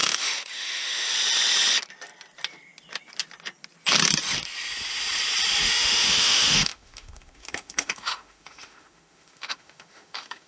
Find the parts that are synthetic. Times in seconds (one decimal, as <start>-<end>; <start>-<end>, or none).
0.0-1.1; 5.6-10.5